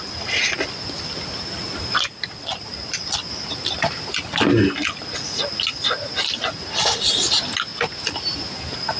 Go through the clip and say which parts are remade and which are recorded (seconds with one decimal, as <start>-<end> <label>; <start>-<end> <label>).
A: 0.0-9.0 recorded